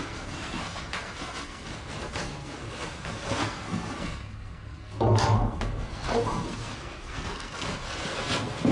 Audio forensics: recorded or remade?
remade